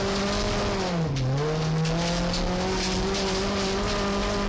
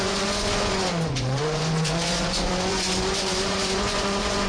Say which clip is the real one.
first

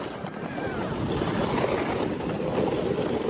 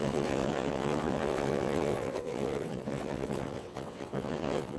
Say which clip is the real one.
first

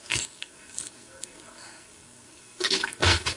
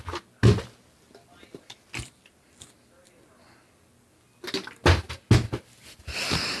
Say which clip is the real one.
second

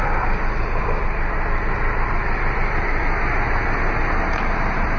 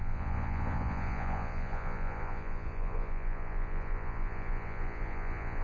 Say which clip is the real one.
first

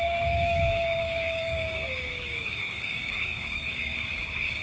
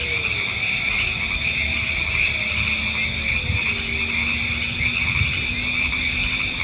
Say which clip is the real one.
second